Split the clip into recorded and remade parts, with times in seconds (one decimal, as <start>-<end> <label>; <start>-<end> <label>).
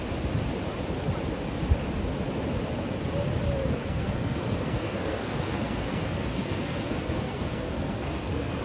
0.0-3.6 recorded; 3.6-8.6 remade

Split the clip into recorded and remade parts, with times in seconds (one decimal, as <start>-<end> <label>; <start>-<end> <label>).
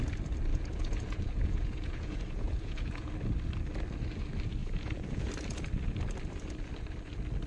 0.0-0.5 recorded; 0.5-3.1 remade; 3.1-4.6 recorded; 4.6-5.3 remade; 5.3-7.5 recorded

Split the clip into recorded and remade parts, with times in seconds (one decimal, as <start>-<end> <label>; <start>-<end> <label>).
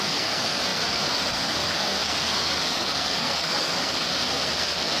0.0-5.0 remade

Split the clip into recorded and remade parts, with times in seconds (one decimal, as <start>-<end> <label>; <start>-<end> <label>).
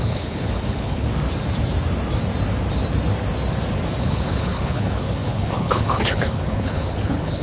0.0-1.1 remade; 1.1-4.0 recorded; 4.0-7.4 remade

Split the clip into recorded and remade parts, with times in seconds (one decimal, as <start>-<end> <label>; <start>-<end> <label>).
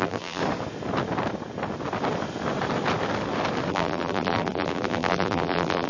0.0-0.4 remade; 0.4-3.7 recorded; 3.7-5.9 remade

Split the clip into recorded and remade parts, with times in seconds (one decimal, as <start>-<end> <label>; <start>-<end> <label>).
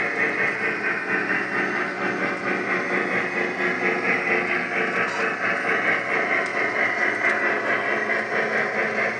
0.0-9.2 recorded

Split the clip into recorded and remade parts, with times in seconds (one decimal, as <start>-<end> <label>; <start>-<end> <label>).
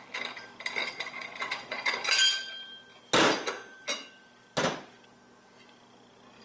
0.0-0.8 recorded; 0.8-1.9 remade; 1.9-6.4 recorded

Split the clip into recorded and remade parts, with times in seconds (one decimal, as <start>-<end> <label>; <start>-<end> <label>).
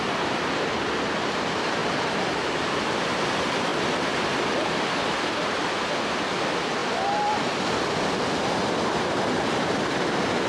0.0-1.8 remade; 1.8-2.6 recorded; 2.6-3.7 remade; 3.7-4.4 recorded; 4.4-6.8 remade; 6.8-10.1 recorded; 10.1-10.5 remade